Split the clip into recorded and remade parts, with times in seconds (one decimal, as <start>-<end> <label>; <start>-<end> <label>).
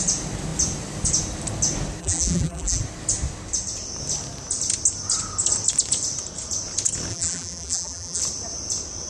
0.0-2.0 recorded; 2.0-2.8 remade; 2.8-7.1 recorded; 7.1-8.2 remade; 8.2-9.1 recorded